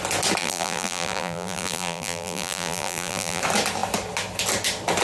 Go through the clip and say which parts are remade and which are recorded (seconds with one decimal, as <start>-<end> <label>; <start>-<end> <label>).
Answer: 0.0-0.4 recorded; 0.4-3.4 remade; 3.4-5.0 recorded